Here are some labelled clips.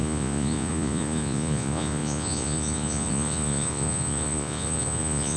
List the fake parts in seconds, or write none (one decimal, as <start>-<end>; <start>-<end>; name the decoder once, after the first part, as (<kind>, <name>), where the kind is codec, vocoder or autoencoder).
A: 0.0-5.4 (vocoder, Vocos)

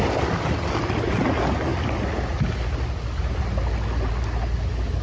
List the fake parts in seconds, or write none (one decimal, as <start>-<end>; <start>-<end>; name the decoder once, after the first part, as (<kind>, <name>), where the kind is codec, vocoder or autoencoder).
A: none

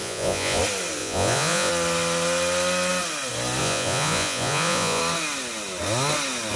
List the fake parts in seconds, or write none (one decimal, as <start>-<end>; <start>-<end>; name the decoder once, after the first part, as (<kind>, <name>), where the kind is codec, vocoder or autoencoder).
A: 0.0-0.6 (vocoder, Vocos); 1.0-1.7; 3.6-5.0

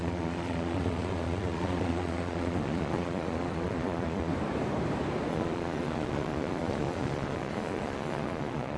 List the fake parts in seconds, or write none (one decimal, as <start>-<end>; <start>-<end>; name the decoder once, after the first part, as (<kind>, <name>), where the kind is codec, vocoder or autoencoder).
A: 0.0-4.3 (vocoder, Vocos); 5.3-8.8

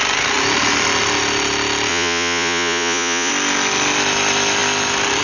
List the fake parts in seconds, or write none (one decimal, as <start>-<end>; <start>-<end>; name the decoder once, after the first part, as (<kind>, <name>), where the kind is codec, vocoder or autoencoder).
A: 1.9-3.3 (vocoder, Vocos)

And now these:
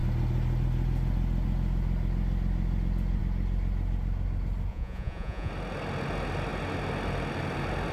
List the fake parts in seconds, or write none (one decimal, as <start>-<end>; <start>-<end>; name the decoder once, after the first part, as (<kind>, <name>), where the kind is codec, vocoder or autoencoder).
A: 4.7-5.5 (vocoder, Vocos)